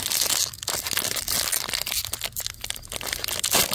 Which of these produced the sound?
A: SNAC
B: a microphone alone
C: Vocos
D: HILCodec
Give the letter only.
B